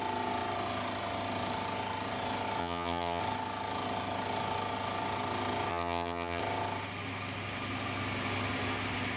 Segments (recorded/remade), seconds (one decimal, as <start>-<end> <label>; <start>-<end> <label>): 0.0-2.6 recorded; 2.6-3.2 remade; 3.2-5.7 recorded; 5.7-6.4 remade; 6.4-9.2 recorded